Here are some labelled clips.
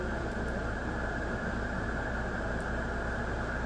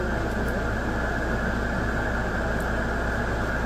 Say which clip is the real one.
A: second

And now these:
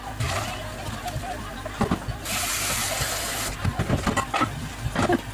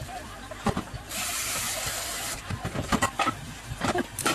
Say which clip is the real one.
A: first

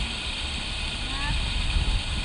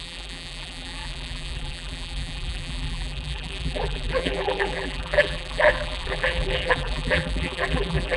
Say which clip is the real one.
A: first